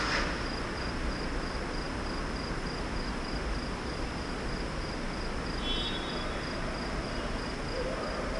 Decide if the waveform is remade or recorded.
recorded